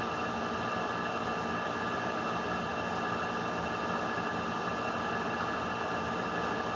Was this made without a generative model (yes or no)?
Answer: yes